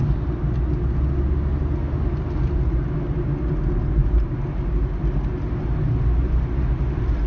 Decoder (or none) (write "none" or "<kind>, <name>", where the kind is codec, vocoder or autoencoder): none